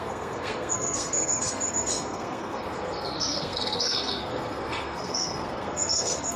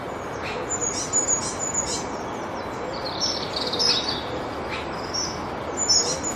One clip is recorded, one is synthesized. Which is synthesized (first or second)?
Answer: first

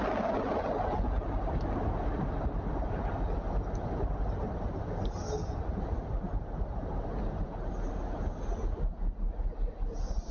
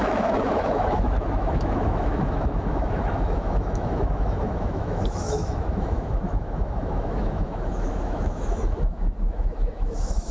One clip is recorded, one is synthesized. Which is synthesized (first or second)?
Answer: second